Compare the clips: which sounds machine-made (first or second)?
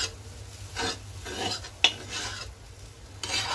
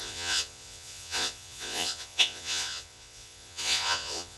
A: second